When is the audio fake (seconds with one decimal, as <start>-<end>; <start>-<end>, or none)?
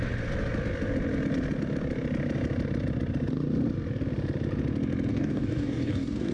5.1-6.3